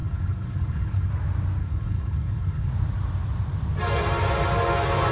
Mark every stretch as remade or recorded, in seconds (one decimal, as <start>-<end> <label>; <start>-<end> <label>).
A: 0.0-1.1 remade; 1.1-1.6 recorded; 1.6-2.7 remade; 2.7-5.1 recorded